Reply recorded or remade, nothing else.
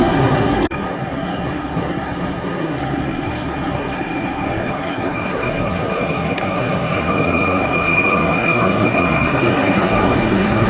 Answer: remade